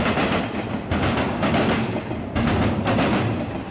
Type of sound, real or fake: real